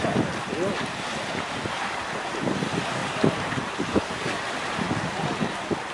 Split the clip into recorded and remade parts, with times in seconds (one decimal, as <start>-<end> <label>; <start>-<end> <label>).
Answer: 0.0-3.0 recorded; 3.0-5.9 remade